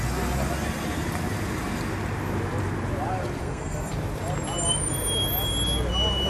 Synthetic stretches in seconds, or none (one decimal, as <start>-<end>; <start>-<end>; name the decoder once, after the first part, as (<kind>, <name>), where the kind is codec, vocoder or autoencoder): 3.4-3.9 (codec, SNAC)